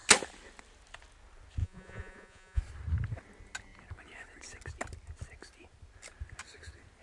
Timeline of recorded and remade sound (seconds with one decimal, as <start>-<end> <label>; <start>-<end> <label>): 0.0-1.6 recorded; 1.6-2.6 remade; 2.6-7.0 recorded